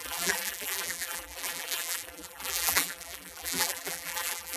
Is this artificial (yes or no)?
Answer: yes